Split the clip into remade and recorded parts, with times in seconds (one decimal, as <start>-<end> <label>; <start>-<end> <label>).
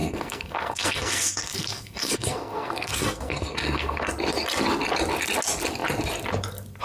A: 0.0-4.1 remade; 4.1-6.8 recorded